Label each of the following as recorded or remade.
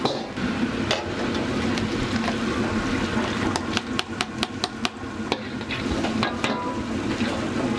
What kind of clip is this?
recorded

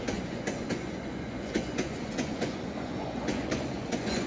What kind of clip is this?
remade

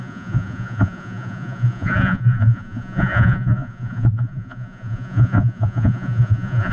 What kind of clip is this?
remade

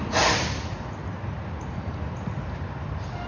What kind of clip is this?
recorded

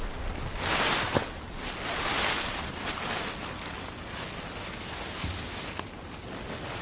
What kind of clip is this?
recorded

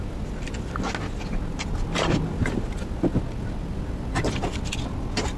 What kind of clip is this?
recorded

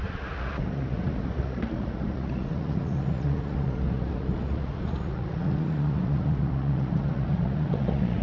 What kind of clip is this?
remade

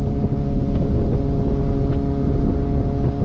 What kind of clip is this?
recorded